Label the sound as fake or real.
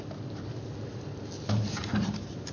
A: real